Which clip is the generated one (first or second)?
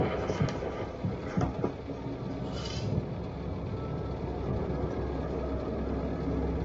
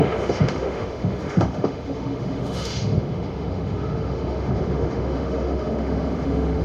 second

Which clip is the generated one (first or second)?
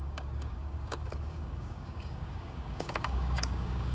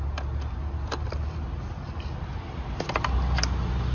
first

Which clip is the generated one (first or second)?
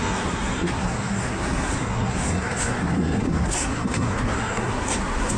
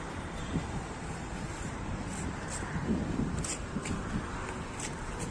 first